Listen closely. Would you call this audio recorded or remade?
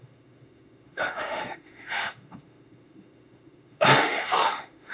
remade